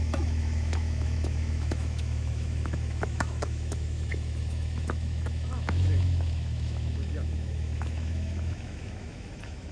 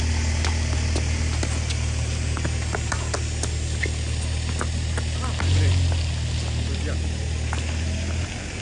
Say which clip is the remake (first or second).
first